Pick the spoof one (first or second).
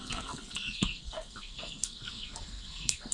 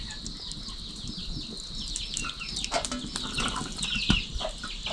first